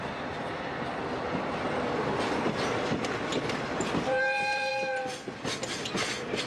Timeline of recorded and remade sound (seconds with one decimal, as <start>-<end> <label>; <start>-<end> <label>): 0.0-1.0 recorded; 1.0-2.2 remade; 2.2-3.3 recorded; 3.3-4.7 remade; 4.7-6.5 recorded